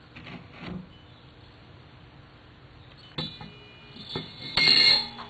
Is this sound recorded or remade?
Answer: recorded